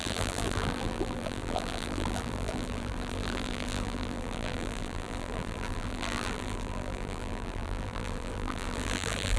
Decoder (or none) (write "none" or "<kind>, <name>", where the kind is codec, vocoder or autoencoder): vocoder, BigVGAN v2